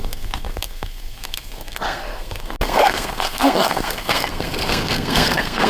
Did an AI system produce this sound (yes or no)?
yes